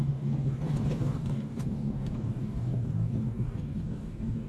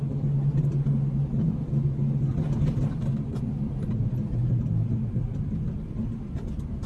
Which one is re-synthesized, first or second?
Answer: first